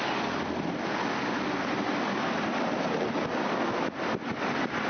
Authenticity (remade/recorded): recorded